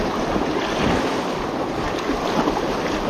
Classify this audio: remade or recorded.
recorded